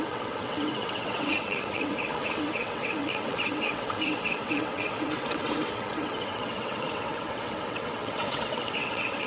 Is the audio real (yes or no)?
no